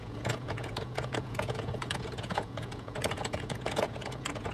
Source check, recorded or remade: remade